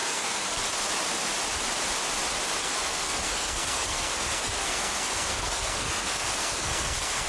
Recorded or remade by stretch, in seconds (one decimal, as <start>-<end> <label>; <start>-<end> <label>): 0.0-0.6 remade; 0.6-2.6 recorded; 2.6-7.3 remade